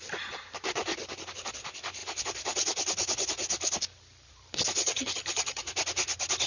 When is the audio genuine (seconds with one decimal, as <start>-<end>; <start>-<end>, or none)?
0.0-4.8; 5.6-6.5